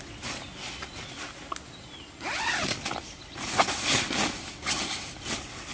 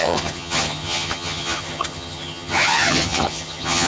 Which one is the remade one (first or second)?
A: second